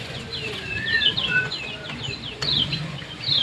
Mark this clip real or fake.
fake